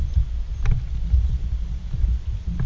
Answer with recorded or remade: recorded